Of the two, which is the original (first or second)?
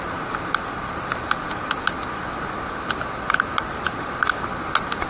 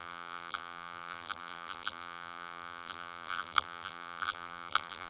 first